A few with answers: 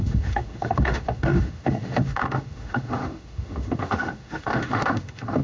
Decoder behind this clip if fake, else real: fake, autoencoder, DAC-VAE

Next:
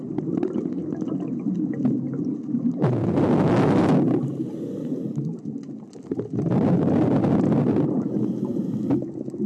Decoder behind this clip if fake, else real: real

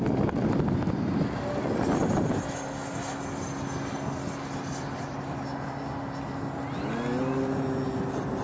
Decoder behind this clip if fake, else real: real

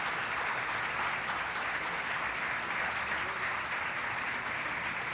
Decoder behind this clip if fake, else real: fake, vocoder, BigVGAN v2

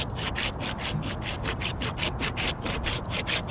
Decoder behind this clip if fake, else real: real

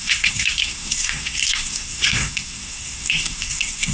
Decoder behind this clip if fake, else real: fake, codec, SNAC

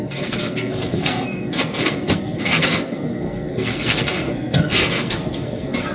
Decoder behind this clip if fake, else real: fake, codec, SNAC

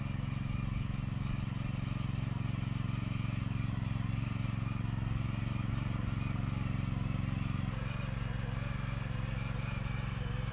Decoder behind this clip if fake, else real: real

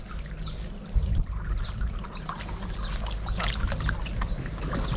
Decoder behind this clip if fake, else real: real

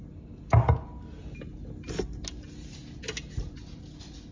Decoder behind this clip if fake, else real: real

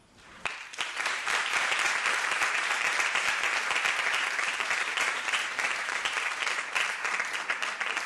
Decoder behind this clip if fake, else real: fake, vocoder, BigVGAN v2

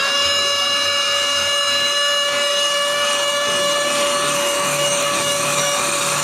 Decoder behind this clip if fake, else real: fake, codec, DAC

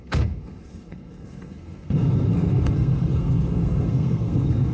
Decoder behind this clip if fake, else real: fake, codec, SNAC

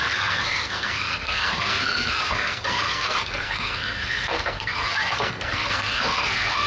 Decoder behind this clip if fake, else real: fake, codec, SNAC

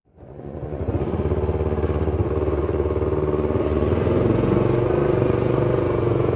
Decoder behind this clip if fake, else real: fake, vocoder, Vocos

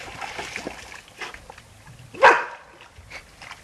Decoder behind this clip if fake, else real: real